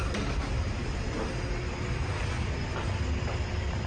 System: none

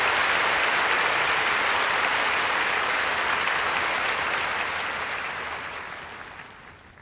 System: none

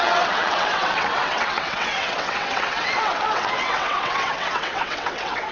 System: vocoder, WaveNeXt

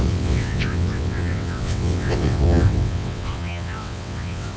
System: vocoder, WaveNeXt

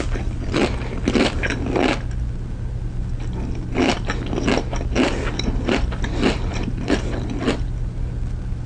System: none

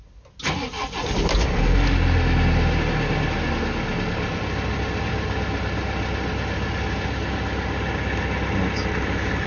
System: none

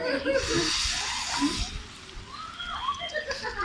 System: none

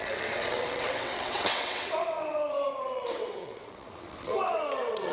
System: vocoder, WaveNeXt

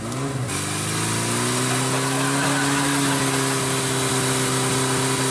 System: none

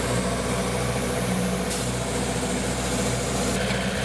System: none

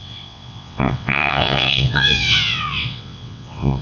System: vocoder, WaveNeXt